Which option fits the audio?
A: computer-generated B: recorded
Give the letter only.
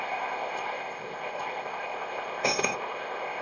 A